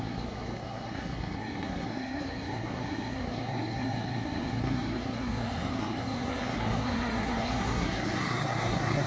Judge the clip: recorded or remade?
remade